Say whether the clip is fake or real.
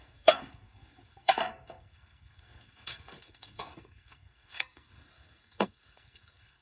fake